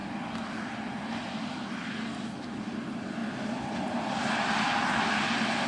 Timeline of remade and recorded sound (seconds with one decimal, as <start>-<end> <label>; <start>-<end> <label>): 0.0-5.7 recorded